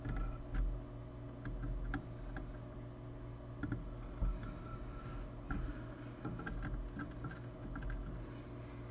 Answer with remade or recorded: recorded